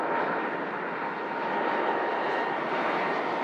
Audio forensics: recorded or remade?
recorded